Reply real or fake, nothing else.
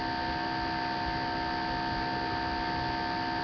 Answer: real